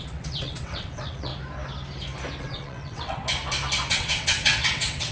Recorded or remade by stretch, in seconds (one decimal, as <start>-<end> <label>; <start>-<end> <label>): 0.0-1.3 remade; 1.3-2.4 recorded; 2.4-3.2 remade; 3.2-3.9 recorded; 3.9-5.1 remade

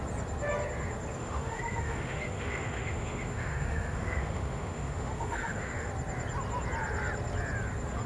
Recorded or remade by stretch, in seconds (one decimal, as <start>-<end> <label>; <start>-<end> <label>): 0.0-1.2 recorded; 1.2-5.9 remade; 5.9-8.1 recorded

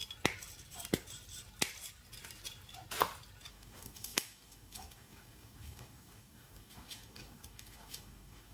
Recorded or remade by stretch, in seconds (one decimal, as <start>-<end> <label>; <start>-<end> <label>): 0.0-3.5 recorded; 3.5-8.5 remade

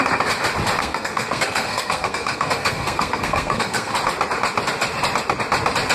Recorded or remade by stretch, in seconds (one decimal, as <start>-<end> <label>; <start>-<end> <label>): 0.0-0.8 recorded; 0.8-3.9 remade; 3.9-5.9 recorded

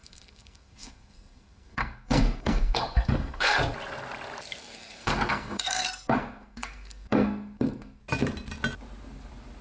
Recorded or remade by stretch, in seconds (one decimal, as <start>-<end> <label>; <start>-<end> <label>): 0.0-3.6 remade; 3.6-4.6 recorded; 4.6-8.0 remade; 8.0-9.6 recorded